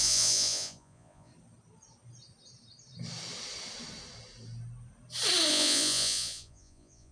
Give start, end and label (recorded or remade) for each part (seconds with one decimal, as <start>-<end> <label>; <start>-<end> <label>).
0.0-1.3 remade; 1.3-5.5 recorded; 5.5-7.1 remade